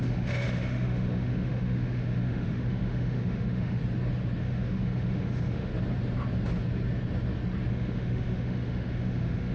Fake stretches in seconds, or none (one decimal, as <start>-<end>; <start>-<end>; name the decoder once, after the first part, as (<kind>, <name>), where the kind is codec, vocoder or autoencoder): 0.0-3.8 (autoencoder, DAC-VAE); 4.4-5.7; 7.7-9.5

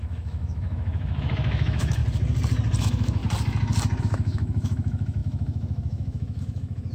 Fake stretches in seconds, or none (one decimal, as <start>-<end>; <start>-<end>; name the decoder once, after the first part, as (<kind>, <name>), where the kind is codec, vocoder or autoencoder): 0.0-2.0 (autoencoder, DAC-VAE); 2.8-3.2; 4.0-6.9

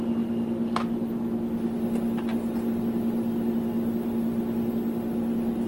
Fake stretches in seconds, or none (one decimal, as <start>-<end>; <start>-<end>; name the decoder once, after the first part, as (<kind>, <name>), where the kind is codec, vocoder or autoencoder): none

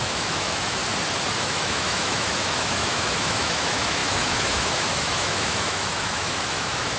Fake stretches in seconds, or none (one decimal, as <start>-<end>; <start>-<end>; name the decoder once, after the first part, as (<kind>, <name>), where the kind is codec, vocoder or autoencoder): 0.0-0.8 (autoencoder, DAC-VAE); 1.4-7.0

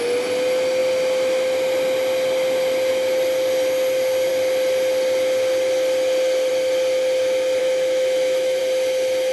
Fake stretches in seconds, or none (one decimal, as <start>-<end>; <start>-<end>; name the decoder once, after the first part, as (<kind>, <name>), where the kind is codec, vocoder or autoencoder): 7.6-8.6 (autoencoder, DAC-VAE)